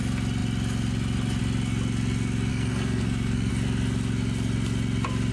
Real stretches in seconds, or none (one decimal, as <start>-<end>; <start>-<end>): 0.0-2.5; 3.5-5.3